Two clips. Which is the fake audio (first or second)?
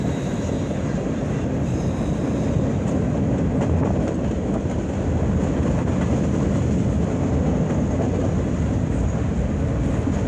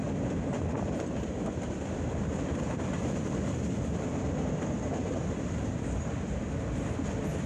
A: second